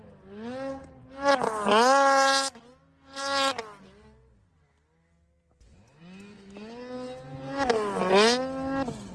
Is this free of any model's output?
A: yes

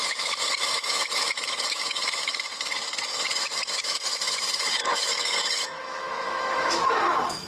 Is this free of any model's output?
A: no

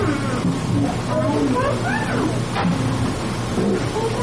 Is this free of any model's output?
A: yes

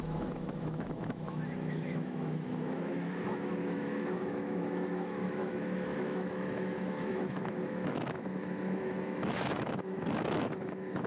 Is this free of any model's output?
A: no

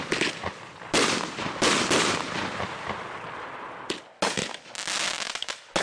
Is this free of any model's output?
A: yes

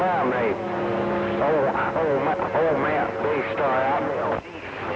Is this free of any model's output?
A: yes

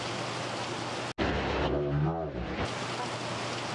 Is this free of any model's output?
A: yes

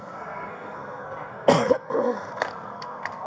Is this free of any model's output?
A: no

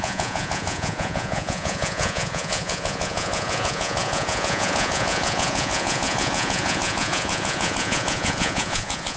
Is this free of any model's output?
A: no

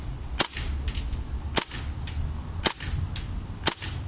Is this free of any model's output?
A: yes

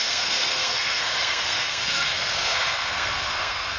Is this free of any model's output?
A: no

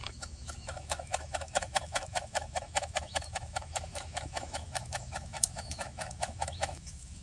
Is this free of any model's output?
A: no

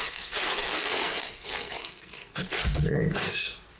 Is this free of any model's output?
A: no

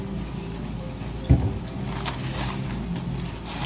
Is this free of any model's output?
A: yes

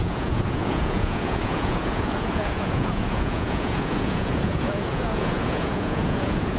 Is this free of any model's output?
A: no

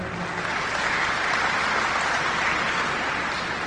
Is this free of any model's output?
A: yes